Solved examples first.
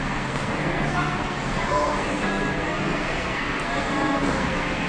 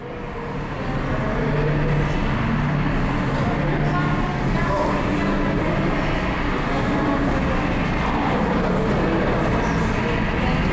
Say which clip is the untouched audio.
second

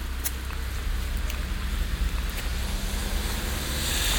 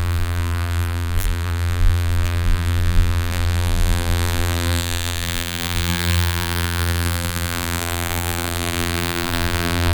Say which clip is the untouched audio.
first